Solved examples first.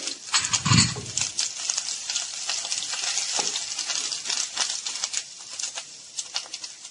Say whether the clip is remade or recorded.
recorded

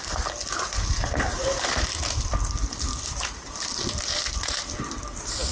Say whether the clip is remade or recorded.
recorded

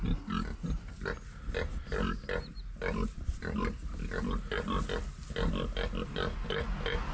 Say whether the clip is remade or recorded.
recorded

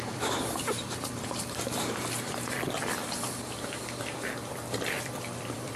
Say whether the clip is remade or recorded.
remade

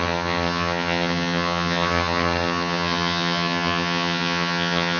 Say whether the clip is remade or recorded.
remade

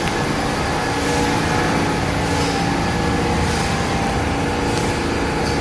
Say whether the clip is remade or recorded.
recorded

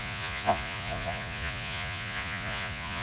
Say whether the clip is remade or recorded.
remade